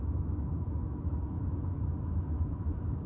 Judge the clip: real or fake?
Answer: fake